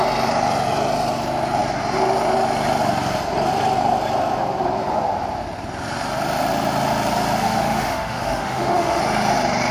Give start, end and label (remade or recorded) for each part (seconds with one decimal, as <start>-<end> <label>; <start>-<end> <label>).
0.0-7.4 recorded; 7.4-9.0 remade; 9.0-9.7 recorded